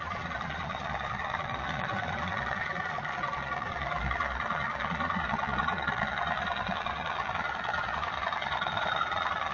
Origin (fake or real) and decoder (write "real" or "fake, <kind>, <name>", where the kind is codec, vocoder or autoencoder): fake, vocoder, Vocos